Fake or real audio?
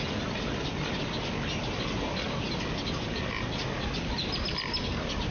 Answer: real